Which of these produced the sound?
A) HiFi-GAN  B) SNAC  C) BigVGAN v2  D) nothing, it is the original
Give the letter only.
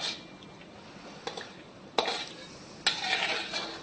D